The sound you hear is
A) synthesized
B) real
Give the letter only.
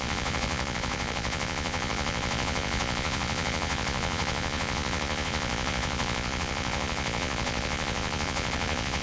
A